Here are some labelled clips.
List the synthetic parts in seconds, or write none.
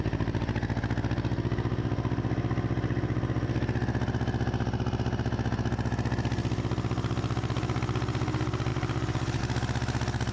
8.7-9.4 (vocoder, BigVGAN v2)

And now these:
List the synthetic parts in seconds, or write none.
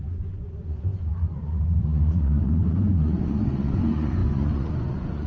0.0-5.3 (vocoder, Vocos)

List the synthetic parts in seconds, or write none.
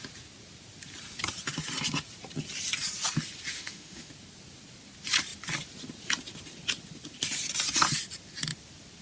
3.5-4.1 (autoencoder, DAC-VAE)